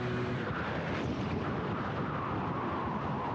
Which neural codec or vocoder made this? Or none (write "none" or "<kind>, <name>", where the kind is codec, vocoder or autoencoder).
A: none